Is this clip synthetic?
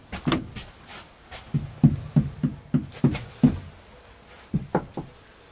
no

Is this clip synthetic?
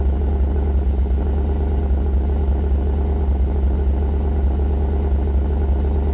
no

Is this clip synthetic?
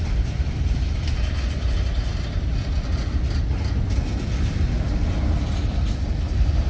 no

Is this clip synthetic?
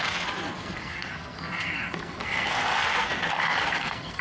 yes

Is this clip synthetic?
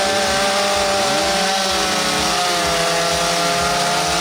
no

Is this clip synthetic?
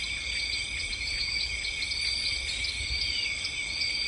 no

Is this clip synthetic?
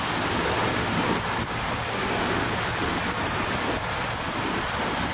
no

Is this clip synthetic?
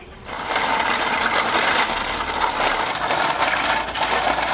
yes